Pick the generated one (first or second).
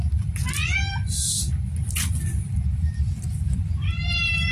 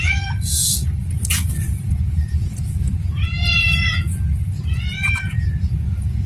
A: second